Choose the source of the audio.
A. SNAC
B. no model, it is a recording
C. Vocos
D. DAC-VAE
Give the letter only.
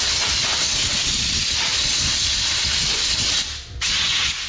B